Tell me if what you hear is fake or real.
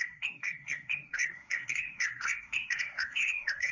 fake